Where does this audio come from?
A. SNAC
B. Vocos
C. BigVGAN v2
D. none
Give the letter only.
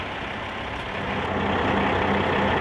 D